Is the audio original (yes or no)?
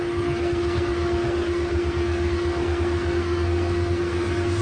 no